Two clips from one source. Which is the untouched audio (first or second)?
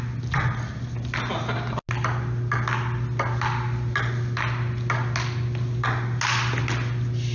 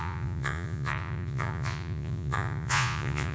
first